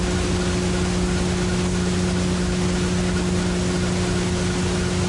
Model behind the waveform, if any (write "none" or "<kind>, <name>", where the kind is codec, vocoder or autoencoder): none